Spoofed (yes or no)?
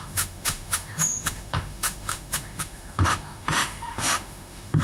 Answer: yes